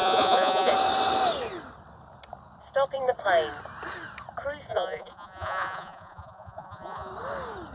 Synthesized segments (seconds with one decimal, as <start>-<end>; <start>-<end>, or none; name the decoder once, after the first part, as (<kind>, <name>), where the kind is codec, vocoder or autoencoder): 0.0-0.7 (vocoder, Vocos); 4.7-7.1